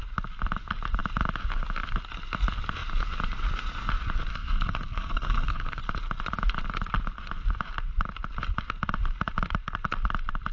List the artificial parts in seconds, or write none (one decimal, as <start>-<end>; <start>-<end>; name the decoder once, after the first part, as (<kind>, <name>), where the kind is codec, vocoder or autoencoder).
4.3-5.8 (codec, SNAC)